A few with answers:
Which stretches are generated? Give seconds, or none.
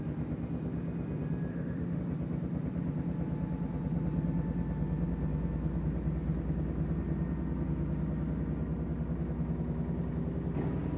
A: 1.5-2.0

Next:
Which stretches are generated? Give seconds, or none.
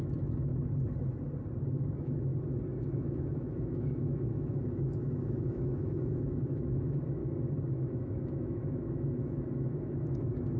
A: 0.0-0.5; 1.6-2.3; 2.8-7.2; 7.7-10.6